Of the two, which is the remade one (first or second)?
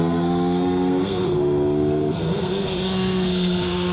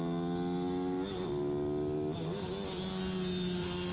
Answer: first